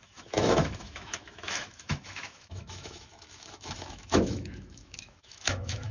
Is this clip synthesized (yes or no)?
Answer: yes